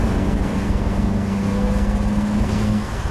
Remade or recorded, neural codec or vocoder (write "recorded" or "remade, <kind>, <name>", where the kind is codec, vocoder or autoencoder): remade, codec, SNAC